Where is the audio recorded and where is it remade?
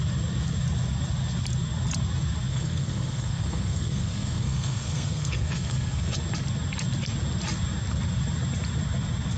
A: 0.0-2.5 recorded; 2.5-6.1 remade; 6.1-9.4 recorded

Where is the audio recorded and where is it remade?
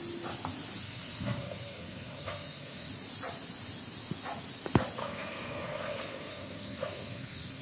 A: 0.0-0.8 recorded; 0.8-2.9 remade; 2.9-5.0 recorded; 5.0-7.6 remade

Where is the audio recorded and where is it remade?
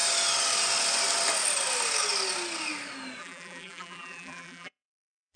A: 0.0-3.2 recorded; 3.2-5.4 remade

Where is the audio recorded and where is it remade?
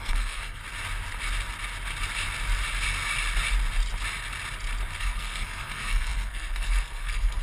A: 0.0-0.6 remade; 0.6-5.0 recorded; 5.0-7.4 remade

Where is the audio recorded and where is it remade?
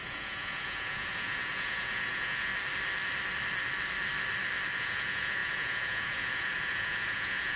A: 0.0-2.5 remade; 2.5-4.8 recorded; 4.8-7.6 remade